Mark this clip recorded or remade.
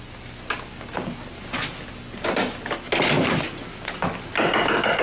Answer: recorded